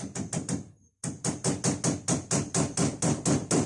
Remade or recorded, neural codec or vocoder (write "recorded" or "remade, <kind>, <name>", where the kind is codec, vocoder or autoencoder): recorded